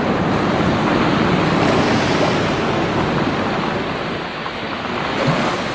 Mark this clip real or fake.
real